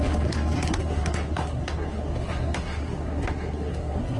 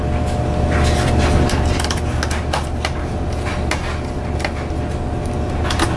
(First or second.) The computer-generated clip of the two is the first